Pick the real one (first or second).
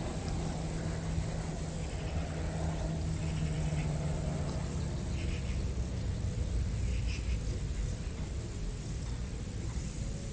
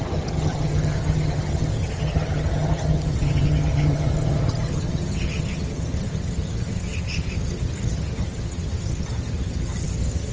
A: first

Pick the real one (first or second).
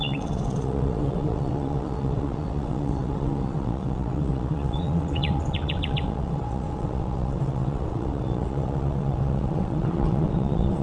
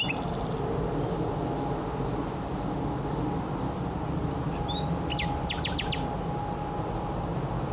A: second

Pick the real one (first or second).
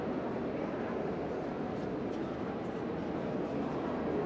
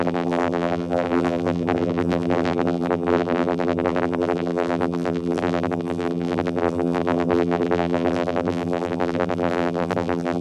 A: first